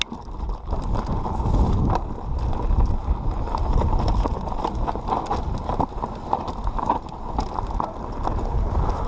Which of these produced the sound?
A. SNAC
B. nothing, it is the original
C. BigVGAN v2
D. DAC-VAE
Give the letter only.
B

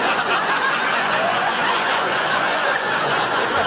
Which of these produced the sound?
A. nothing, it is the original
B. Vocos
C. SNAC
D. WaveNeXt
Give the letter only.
B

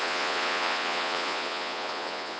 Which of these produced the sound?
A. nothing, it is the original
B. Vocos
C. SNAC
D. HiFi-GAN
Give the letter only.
B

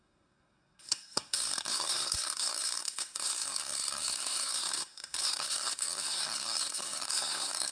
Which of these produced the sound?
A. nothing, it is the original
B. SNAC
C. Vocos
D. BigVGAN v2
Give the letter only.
B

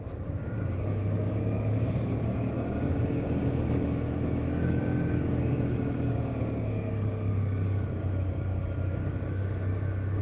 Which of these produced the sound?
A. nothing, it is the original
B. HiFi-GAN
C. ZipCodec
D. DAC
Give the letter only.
D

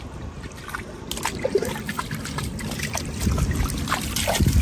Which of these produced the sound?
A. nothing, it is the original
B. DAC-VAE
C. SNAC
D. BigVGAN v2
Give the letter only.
A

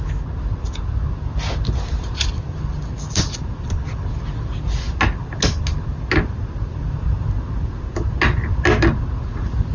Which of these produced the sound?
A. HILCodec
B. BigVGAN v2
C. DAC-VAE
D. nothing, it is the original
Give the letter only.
D